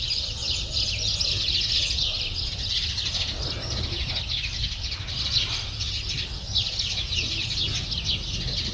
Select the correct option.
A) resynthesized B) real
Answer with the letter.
B